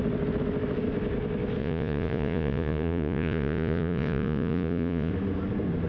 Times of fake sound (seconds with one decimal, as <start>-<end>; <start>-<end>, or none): 1.6-5.1